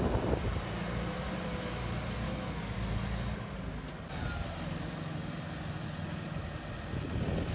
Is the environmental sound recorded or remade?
recorded